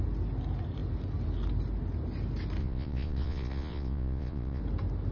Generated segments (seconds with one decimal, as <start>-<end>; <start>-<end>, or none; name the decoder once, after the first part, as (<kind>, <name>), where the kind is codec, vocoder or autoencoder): 2.6-4.6 (vocoder, Vocos)